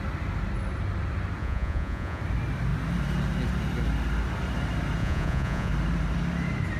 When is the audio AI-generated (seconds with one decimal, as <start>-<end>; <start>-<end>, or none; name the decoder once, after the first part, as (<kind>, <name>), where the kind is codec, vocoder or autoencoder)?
1.4-2.2 (vocoder, Vocos); 5.0-5.7